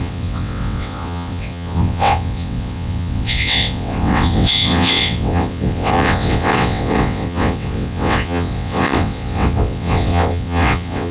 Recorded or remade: remade